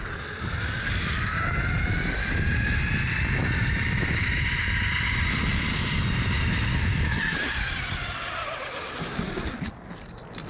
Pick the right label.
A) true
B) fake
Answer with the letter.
A